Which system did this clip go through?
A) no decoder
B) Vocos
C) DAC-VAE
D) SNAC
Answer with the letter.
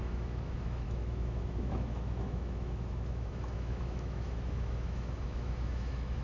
C